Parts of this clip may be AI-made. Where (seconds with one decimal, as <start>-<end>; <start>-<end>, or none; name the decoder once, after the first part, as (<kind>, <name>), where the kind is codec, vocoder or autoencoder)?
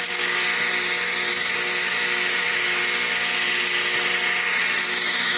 0.0-0.4 (autoencoder, DAC-VAE); 1.3-2.8; 4.9-5.4